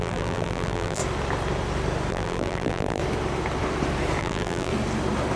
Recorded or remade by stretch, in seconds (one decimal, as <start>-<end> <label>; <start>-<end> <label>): 0.0-1.0 remade; 1.0-2.1 recorded; 2.1-3.0 remade; 3.0-4.2 recorded; 4.2-4.7 remade; 4.7-5.4 recorded